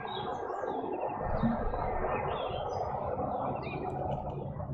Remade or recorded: recorded